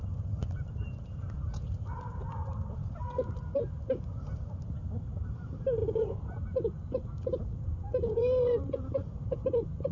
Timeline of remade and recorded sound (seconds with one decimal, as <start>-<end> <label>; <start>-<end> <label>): 0.0-5.8 remade; 5.8-8.1 recorded; 8.1-9.9 remade